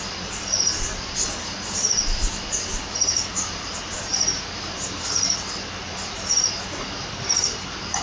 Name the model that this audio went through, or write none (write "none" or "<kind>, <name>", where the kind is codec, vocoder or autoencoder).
vocoder, BigVGAN v2